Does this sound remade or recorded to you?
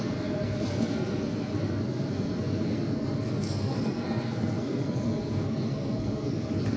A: remade